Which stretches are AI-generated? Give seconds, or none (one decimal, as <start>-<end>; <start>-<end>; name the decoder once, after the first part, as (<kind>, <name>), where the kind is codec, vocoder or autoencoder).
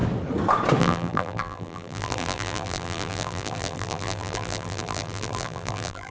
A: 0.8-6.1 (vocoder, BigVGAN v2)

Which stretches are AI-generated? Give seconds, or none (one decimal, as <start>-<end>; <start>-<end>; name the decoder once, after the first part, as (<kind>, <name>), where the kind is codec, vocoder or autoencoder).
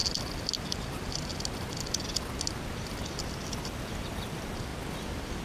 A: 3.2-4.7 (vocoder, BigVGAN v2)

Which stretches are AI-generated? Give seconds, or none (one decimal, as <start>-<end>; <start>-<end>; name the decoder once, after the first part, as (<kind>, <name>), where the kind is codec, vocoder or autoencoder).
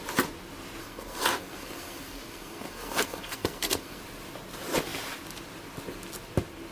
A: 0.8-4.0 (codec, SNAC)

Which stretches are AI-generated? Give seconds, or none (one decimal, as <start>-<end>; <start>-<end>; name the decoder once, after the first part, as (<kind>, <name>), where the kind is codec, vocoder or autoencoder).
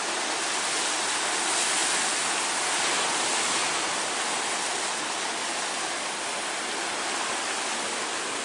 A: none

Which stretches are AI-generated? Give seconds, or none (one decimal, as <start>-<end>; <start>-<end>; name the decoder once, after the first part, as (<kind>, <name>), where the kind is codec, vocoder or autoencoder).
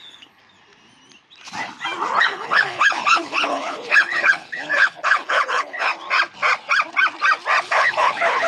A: 0.0-0.4 (codec, HILCodec); 2.2-5.9; 7.6-8.5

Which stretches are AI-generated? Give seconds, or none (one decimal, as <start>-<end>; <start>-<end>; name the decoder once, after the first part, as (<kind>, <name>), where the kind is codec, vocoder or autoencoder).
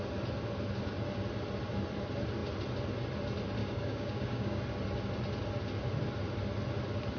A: 3.6-4.6 (codec, DAC)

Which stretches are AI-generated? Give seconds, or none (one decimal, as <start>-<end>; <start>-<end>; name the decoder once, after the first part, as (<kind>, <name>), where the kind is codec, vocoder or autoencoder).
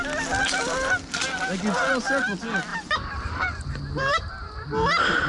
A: 2.7-5.3 (vocoder, BigVGAN v2)